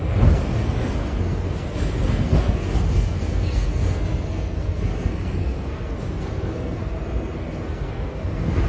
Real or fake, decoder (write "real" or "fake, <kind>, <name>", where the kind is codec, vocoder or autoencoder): fake, codec, SNAC